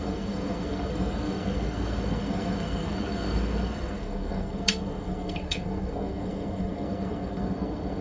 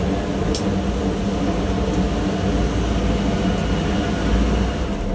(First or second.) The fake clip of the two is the first